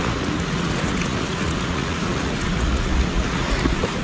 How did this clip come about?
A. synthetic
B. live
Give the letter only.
A